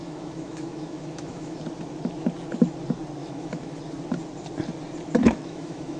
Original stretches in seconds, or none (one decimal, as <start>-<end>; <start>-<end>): 1.6-3.2; 3.8-5.2